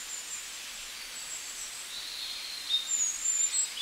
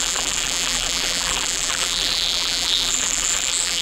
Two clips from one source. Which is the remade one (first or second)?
second